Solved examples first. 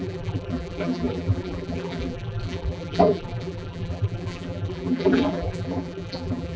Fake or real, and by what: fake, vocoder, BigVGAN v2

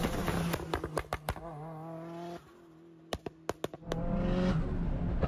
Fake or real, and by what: real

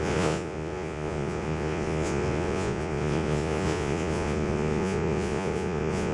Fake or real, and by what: fake, vocoder, Vocos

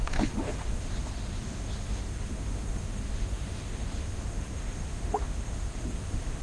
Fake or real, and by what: fake, autoencoder, DAC-VAE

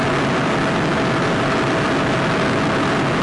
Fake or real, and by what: real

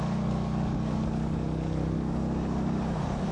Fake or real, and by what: fake, codec, DAC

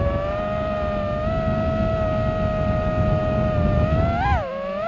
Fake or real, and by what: real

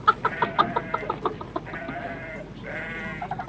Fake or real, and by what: real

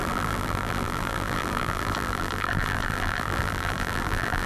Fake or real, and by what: fake, vocoder, BigVGAN v2